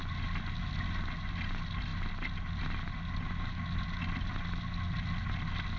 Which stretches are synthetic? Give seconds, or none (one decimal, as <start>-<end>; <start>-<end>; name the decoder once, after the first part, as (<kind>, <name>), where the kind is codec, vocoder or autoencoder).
none